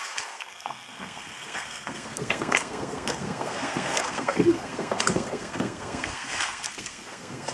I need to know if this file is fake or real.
fake